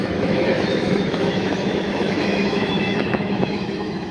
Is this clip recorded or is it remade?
remade